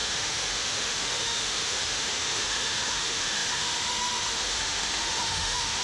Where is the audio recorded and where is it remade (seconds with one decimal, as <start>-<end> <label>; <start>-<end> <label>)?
0.0-5.8 remade